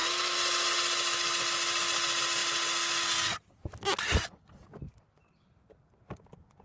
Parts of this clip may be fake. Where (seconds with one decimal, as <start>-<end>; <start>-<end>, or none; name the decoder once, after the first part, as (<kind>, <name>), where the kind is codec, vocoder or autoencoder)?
none